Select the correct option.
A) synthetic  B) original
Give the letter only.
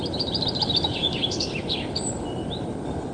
B